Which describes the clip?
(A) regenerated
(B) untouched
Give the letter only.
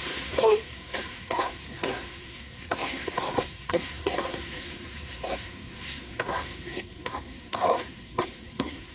A